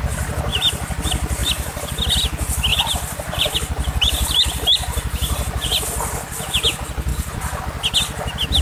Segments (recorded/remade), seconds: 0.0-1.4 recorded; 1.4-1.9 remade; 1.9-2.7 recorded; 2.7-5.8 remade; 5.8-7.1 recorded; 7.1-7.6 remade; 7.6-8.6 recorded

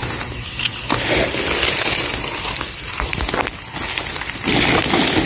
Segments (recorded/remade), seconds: 0.0-5.3 recorded

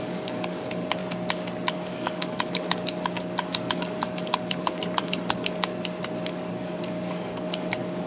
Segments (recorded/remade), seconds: 0.0-1.0 remade; 1.0-1.7 recorded; 1.7-5.7 remade; 5.7-6.3 recorded; 6.3-8.1 remade

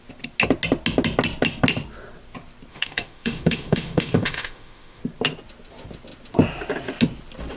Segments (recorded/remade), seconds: 0.0-2.7 recorded; 2.7-5.0 remade; 5.0-7.6 recorded

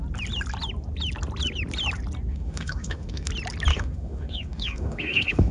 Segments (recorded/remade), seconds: 0.0-2.3 recorded; 2.3-3.3 remade; 3.3-3.7 recorded; 3.7-5.5 remade